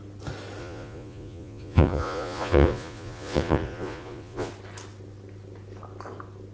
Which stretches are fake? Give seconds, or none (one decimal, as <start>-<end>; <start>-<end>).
0.6-4.5

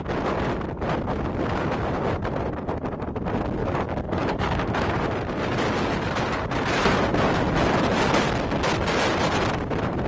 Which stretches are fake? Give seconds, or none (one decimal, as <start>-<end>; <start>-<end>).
3.6-4.9

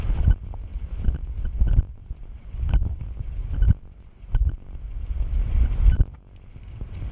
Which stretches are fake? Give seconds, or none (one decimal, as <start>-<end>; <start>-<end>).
0.7-4.8